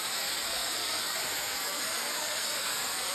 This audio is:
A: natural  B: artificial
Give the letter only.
B